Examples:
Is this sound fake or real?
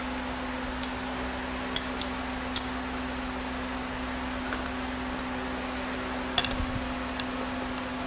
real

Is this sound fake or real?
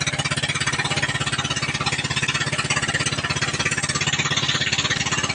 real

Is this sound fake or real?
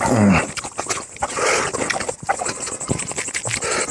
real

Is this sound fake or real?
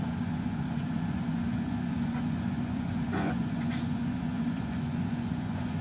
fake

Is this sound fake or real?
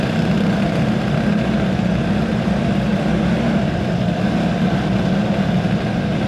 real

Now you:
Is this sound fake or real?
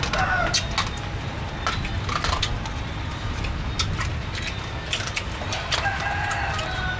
real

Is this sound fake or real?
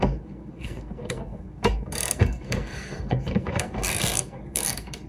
fake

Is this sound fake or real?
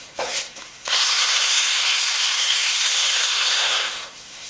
fake